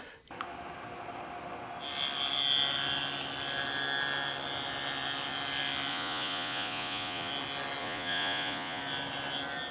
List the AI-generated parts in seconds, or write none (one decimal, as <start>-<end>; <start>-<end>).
5.9-7.3; 7.8-8.8